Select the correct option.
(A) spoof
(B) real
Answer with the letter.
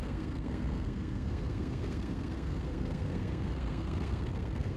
A